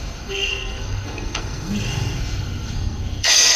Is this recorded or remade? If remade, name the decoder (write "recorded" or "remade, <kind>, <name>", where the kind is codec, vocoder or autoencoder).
remade, codec, SNAC